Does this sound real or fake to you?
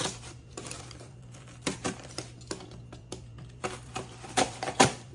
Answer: fake